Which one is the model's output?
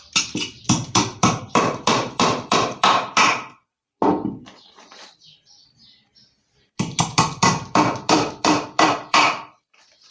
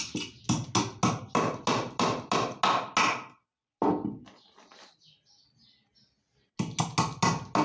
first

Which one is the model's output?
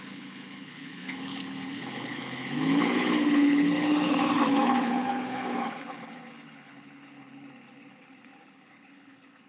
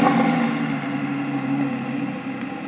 first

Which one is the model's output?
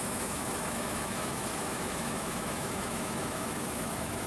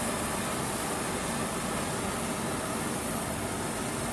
first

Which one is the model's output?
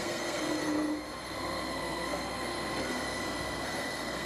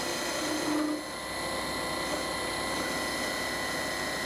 first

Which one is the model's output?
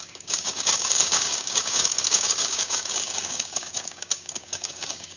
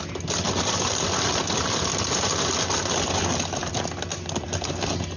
first